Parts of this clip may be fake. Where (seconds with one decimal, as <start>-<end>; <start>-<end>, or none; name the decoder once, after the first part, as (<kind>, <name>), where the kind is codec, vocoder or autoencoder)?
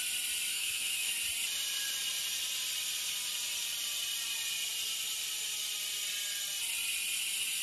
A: 0.5-1.1 (autoencoder, DAC-VAE)